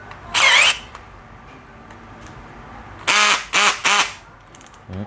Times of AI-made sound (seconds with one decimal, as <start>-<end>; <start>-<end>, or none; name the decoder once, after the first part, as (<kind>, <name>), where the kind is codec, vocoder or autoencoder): 0.0-2.8 (vocoder, BigVGAN v2); 3.8-4.5